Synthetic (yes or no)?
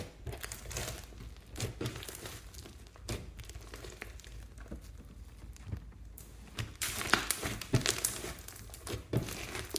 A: no